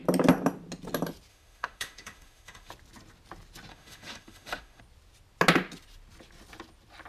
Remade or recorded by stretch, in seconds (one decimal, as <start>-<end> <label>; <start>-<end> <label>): 0.0-1.3 recorded; 1.3-2.7 remade; 2.7-3.7 recorded; 3.7-4.8 remade; 4.8-7.1 recorded